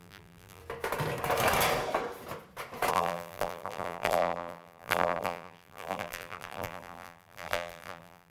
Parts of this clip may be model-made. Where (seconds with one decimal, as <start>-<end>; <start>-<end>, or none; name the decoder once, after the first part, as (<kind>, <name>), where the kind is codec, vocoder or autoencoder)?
0.0-0.6 (vocoder, BigVGAN v2); 2.9-8.3